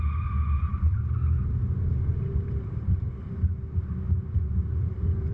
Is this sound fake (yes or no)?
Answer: no